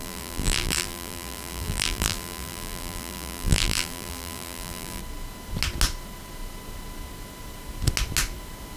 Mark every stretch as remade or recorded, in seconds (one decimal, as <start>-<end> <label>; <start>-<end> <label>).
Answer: 0.0-5.0 remade; 5.0-8.8 recorded